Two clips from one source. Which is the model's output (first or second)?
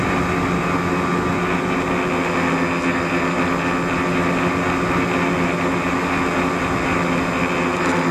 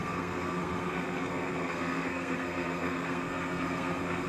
second